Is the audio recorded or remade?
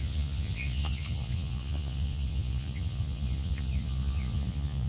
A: remade